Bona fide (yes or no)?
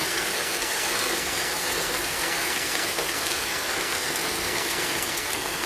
no